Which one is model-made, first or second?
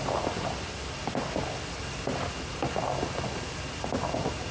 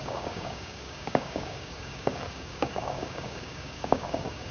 second